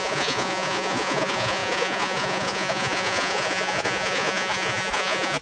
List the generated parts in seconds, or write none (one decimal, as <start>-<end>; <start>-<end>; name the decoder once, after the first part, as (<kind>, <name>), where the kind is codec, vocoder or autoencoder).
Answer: 0.0-5.4 (vocoder, Vocos)